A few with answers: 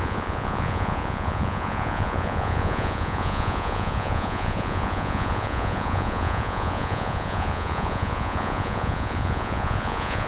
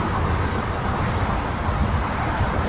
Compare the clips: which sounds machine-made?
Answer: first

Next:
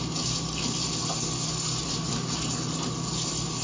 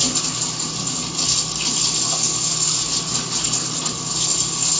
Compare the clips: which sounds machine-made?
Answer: first